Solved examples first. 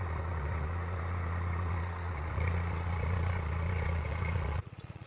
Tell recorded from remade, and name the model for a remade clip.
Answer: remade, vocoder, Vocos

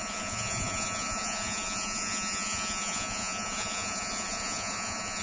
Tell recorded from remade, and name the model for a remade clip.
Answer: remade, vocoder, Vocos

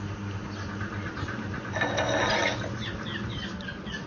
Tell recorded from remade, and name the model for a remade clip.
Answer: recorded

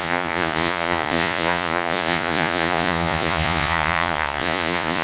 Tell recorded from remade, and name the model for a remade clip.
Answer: remade, vocoder, Vocos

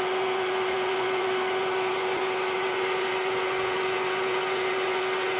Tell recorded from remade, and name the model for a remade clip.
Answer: remade, vocoder, Vocos